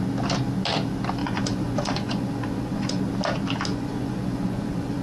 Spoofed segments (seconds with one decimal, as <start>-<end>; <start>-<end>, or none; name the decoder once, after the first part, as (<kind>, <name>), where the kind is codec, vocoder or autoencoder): 1.2-3.0 (vocoder, Vocos); 3.7-5.0

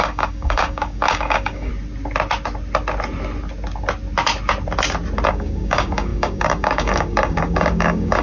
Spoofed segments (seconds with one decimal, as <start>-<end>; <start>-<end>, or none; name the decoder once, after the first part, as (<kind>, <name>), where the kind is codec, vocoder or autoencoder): 0.0-1.7 (codec, DAC); 5.3-8.2

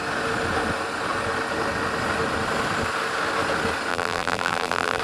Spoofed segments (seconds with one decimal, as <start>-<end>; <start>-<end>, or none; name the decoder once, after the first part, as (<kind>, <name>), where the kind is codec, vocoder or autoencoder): 3.9-5.0 (vocoder, BigVGAN v2)

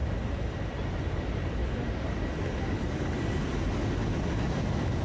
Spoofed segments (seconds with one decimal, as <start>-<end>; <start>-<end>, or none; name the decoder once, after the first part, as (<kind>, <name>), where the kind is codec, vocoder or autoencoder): 0.0-1.0 (vocoder, BigVGAN v2)